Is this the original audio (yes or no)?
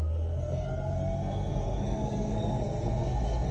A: no